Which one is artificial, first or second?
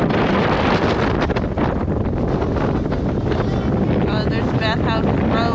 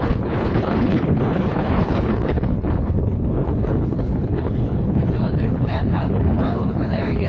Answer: second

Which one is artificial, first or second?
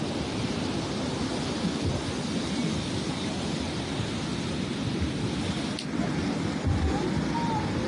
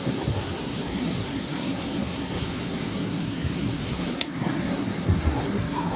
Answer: second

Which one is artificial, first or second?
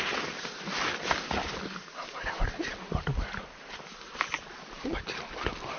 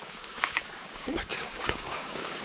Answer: second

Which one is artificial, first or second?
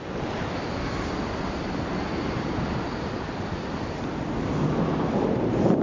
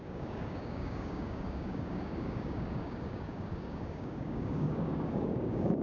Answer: second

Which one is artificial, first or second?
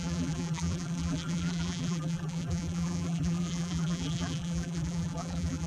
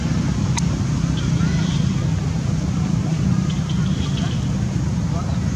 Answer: first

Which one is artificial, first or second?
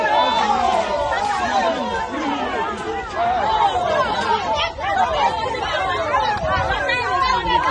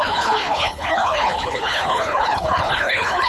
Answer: second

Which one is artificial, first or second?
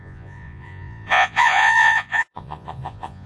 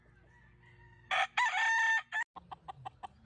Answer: first